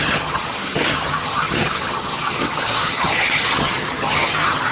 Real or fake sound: fake